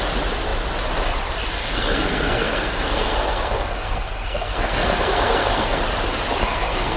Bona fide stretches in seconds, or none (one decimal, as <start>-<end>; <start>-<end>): 0.0-1.6; 5.8-6.4

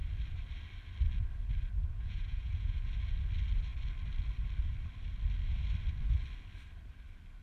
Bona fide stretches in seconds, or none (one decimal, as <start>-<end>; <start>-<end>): 0.0-1.9; 2.9-7.4

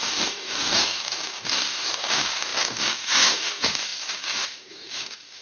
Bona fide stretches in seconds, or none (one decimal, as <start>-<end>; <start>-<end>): none

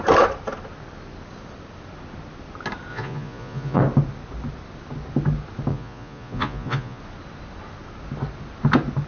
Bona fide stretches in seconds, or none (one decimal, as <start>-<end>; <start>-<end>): 0.0-2.9; 3.8-5.7; 7.0-9.1

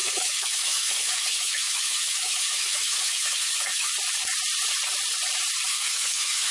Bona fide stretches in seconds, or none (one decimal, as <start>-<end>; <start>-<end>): 3.9-5.7